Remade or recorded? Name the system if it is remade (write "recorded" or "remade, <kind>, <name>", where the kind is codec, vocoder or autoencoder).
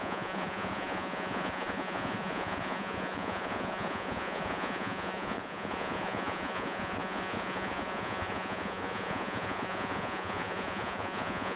remade, vocoder, Vocos